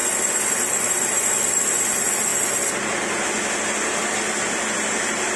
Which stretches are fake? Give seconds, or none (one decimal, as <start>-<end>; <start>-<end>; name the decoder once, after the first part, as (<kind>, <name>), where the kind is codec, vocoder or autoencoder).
none